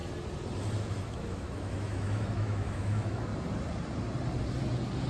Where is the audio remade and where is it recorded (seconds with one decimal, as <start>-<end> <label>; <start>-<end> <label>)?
0.0-0.8 recorded; 0.8-3.3 remade; 3.3-5.1 recorded